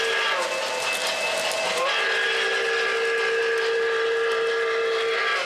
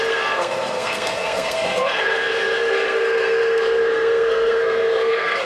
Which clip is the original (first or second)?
first